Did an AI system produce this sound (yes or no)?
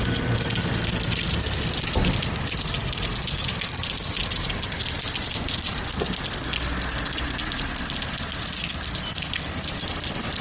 no